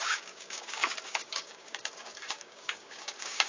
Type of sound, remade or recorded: remade